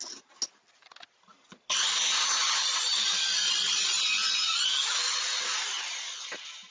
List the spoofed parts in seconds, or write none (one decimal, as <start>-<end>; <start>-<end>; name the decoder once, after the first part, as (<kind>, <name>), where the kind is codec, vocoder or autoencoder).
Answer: none